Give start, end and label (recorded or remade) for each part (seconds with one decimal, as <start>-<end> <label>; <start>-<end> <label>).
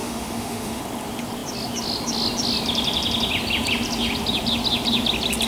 0.0-0.8 remade; 0.8-5.5 recorded